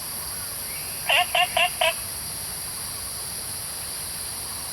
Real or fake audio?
real